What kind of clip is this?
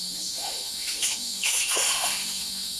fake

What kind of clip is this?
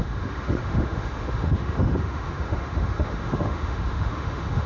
fake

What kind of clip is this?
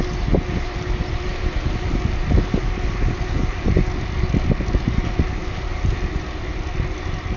real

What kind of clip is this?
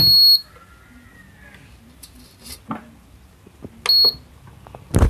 real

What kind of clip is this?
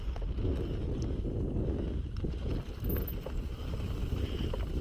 real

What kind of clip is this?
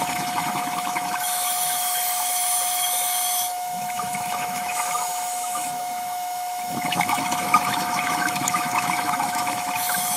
fake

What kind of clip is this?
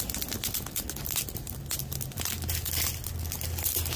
real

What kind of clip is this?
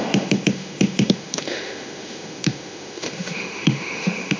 fake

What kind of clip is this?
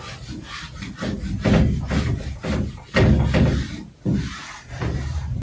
real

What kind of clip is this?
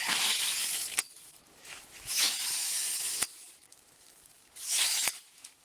fake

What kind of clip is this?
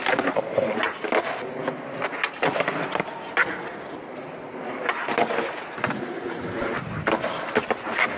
real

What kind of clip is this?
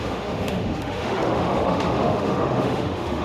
fake